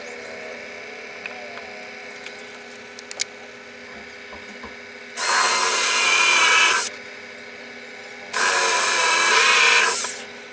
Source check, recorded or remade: recorded